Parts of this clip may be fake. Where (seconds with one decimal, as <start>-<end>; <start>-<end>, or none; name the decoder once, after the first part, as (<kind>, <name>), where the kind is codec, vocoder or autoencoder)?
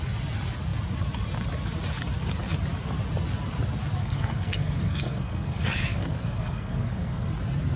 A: 4.0-7.3 (codec, SNAC)